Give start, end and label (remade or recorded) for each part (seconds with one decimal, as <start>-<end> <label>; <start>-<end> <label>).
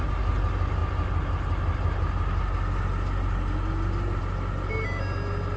0.0-5.6 recorded